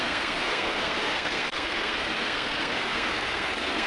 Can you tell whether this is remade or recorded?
remade